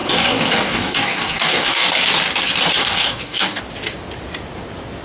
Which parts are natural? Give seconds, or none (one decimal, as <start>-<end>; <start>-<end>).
1.9-2.8; 3.6-5.0